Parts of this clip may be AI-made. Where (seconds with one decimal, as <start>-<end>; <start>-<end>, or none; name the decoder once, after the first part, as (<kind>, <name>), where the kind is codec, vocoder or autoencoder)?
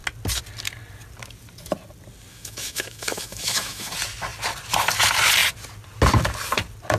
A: 2.3-3.9 (autoencoder, DAC-VAE)